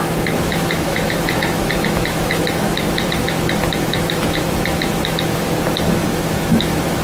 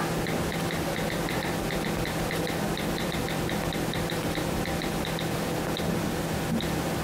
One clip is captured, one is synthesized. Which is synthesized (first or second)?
first